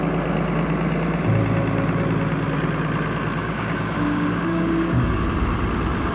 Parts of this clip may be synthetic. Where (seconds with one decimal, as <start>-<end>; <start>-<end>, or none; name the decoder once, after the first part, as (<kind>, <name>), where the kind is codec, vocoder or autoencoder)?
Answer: 3.4-5.2 (codec, DAC)